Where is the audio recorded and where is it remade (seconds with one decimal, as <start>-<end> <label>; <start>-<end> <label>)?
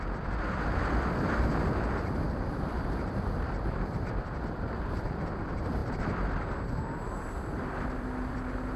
0.0-8.8 remade